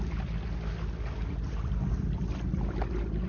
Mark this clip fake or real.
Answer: real